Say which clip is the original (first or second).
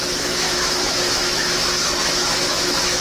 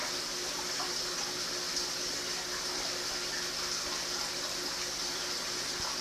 second